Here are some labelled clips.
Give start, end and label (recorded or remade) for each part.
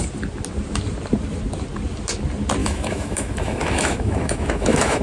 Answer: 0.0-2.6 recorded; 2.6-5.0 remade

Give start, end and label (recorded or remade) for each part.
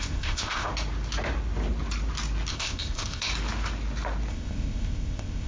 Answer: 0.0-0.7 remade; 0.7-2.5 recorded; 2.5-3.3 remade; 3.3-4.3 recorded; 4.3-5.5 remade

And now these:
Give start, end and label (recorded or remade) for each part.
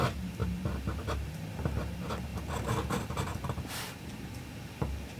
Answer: 0.0-2.3 remade; 2.3-3.1 recorded; 3.1-5.2 remade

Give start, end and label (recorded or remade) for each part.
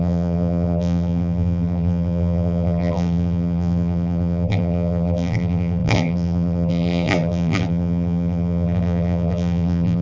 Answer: 0.0-10.0 remade